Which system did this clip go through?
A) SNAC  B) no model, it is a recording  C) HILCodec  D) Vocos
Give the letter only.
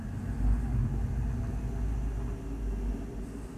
B